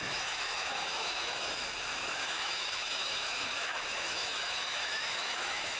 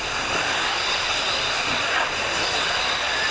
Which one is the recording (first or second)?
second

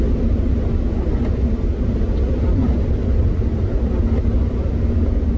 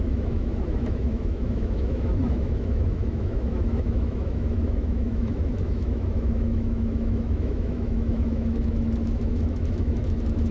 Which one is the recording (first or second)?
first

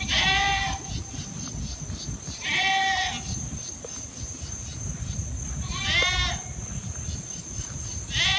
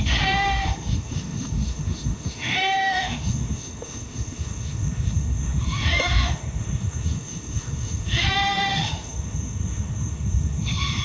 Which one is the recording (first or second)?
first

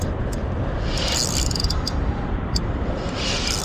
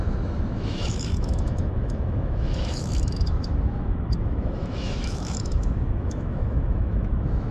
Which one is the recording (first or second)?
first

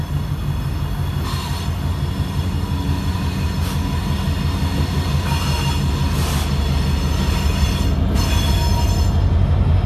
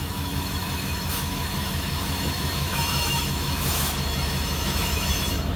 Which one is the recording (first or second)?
first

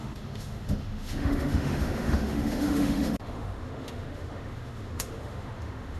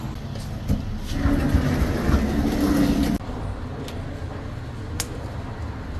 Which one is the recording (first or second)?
second